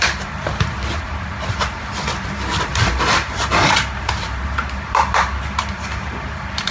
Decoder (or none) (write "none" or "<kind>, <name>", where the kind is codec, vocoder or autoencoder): vocoder, BigVGAN v2